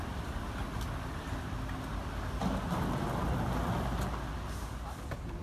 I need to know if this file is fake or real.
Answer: real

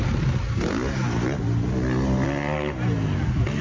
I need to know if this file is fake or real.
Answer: real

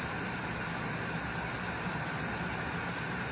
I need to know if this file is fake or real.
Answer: real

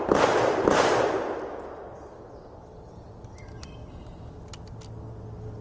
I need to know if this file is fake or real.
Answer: real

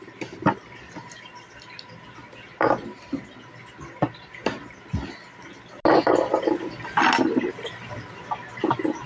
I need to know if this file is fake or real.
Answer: real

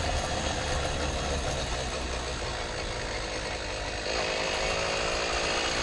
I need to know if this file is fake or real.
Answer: real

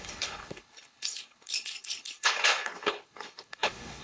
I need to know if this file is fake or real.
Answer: fake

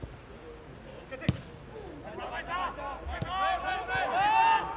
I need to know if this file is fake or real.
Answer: real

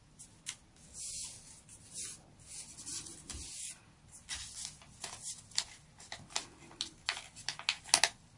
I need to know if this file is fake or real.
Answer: real